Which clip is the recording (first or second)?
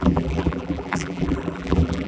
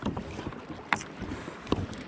second